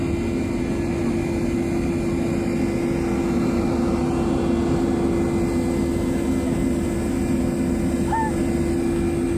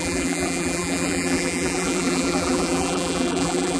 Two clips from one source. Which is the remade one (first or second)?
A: second